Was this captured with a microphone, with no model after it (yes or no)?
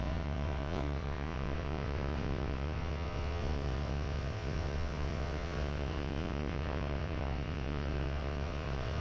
no